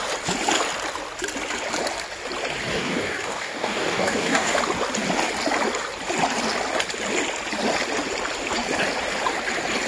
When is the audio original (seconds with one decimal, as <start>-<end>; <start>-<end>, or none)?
0.0-2.7; 4.6-9.9

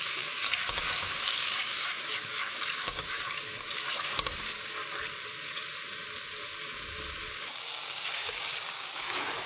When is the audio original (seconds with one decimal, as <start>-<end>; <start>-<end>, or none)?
4.8-7.3

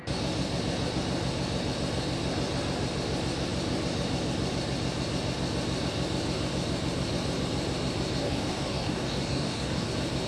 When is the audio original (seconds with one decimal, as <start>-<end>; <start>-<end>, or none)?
0.0-8.2; 9.9-10.3

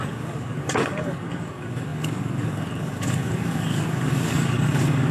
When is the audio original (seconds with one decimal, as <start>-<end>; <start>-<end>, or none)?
none

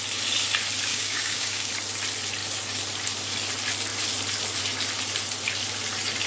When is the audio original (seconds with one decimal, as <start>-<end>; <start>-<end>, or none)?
0.0-0.9; 1.7-6.3

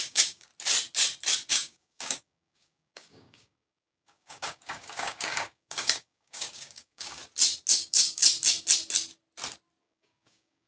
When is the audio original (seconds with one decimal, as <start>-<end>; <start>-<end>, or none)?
0.5-1.5; 7.2-7.7; 8.2-9.8

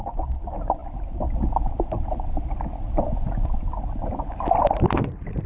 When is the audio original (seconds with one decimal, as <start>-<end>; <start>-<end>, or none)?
0.0-5.5